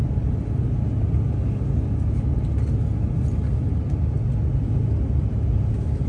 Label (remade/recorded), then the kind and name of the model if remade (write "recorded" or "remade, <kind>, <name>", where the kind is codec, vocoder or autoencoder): recorded